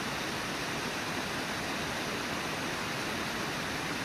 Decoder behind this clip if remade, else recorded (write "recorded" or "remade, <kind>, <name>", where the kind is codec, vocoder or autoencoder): recorded